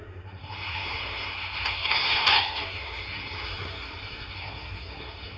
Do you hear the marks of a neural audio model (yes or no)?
yes